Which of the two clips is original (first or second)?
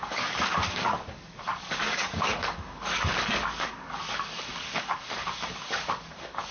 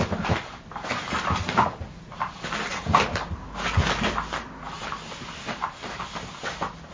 second